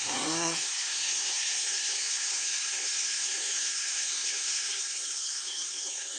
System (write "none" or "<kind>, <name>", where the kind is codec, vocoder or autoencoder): codec, SNAC